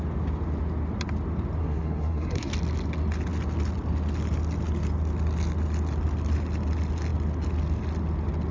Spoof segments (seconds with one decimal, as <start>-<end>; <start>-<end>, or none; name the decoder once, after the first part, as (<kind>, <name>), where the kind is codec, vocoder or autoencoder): 1.6-2.5 (codec, SNAC)